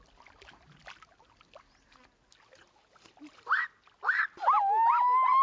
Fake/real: real